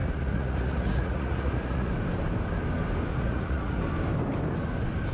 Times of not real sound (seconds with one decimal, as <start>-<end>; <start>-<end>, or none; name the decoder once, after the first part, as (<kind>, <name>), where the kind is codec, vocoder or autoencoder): 0.0-1.9 (vocoder, Vocos); 3.1-3.8